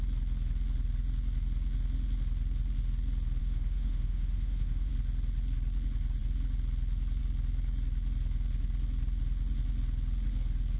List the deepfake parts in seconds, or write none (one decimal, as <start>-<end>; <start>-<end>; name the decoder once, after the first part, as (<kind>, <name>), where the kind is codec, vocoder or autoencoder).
3.4-4.9 (autoencoder, DAC-VAE)